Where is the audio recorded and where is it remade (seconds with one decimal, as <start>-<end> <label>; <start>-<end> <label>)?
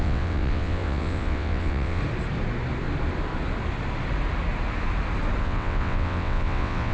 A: 0.0-2.0 remade; 2.0-5.4 recorded; 5.4-6.9 remade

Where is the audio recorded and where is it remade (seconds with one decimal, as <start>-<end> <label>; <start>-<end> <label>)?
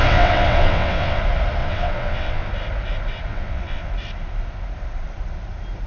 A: 0.0-1.2 remade; 1.2-1.6 recorded; 1.6-2.5 remade; 2.5-3.3 recorded; 3.3-3.9 remade; 3.9-5.9 recorded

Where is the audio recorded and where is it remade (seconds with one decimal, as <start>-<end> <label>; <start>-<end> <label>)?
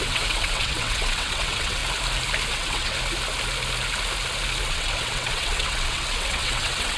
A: 0.0-1.8 remade; 1.8-2.5 recorded; 2.5-3.0 remade; 3.0-4.7 recorded; 4.7-7.0 remade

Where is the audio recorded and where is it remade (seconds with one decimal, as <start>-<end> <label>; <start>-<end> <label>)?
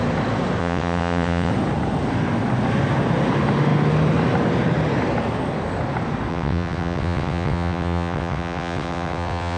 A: 0.0-0.6 recorded; 0.6-1.5 remade; 1.5-6.3 recorded; 6.3-9.6 remade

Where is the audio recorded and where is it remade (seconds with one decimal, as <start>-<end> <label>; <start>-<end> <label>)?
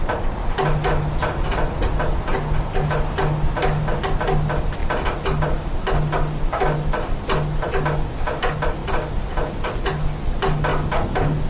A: 0.0-11.5 recorded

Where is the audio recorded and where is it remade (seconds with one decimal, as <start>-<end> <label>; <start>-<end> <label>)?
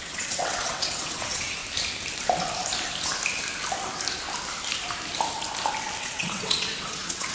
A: 0.0-1.6 remade; 1.6-6.0 recorded; 6.0-7.3 remade